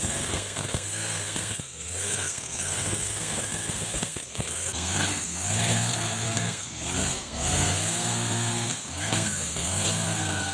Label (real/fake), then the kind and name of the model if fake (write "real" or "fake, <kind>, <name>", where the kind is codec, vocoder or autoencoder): fake, codec, SNAC